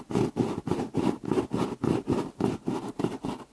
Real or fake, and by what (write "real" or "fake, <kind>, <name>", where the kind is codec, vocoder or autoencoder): real